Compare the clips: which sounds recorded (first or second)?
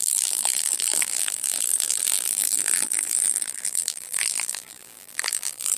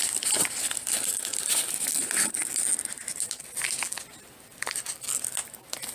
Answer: second